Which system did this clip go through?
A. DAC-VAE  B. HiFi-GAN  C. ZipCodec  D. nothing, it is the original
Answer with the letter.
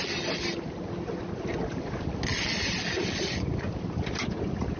D